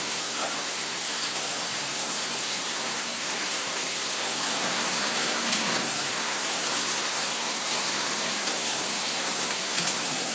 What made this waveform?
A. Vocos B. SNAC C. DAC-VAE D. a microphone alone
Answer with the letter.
B